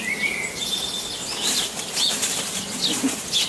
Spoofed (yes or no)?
no